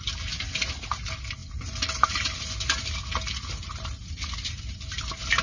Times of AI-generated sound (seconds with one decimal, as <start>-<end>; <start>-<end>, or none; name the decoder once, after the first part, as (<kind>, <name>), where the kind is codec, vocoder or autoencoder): none